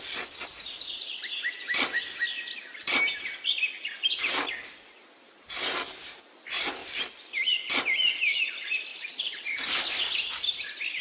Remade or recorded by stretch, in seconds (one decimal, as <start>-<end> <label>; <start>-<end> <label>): 0.0-6.8 recorded; 6.8-7.7 remade; 7.7-8.9 recorded; 8.9-9.9 remade; 9.9-11.0 recorded